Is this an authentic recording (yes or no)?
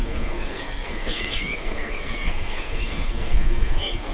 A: no